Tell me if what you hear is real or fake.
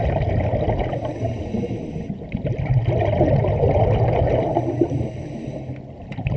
real